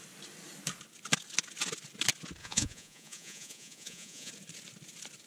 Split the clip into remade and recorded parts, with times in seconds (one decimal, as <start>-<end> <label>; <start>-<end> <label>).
0.0-2.4 recorded; 2.4-4.3 remade; 4.3-5.3 recorded